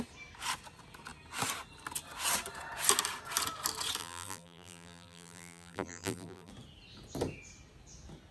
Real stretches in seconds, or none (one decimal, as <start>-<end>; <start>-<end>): 0.0-4.0; 6.5-8.3